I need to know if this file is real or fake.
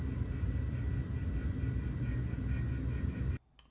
real